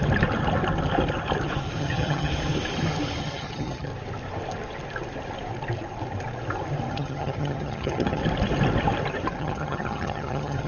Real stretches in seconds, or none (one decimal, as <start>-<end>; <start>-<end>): 0.0-1.8; 2.3-3.2; 3.9-6.9; 8.2-9.4